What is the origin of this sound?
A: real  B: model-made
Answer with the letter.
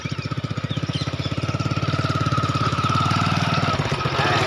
A